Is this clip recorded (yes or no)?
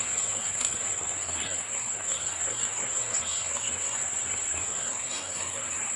no